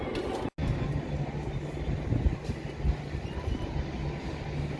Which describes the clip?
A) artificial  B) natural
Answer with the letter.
B